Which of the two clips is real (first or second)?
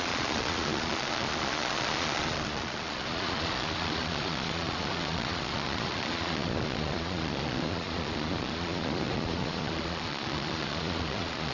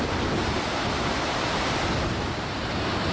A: second